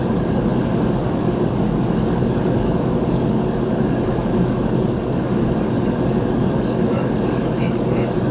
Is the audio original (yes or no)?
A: no